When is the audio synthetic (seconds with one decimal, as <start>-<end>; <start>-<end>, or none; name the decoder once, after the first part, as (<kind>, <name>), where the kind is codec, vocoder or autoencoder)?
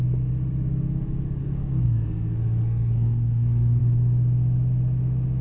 1.4-3.8 (codec, SNAC)